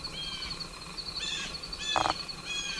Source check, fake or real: real